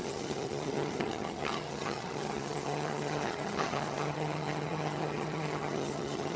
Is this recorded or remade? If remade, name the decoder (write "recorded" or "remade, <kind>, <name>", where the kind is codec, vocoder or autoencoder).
remade, vocoder, HiFi-GAN